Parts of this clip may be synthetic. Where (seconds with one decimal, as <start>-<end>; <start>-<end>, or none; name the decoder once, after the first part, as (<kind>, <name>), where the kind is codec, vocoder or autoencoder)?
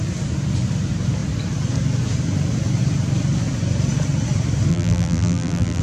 4.7-5.8 (vocoder, BigVGAN v2)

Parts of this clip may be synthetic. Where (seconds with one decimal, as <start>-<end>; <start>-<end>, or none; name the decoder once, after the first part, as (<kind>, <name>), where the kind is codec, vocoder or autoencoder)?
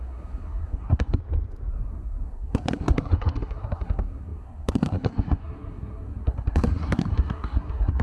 0.0-1.2 (codec, SNAC); 1.7-8.0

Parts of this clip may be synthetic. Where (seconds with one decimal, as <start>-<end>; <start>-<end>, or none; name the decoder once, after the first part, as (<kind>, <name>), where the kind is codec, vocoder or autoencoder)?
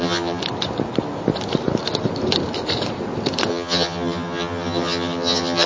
0.0-0.4 (vocoder, HiFi-GAN); 3.5-5.7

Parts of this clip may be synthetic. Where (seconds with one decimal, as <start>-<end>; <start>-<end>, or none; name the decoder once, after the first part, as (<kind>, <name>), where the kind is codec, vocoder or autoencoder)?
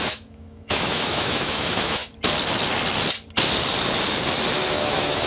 0.0-2.0 (autoencoder, DAC-VAE); 4.7-5.3